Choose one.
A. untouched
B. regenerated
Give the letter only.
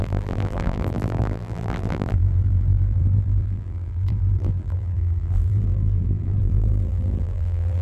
B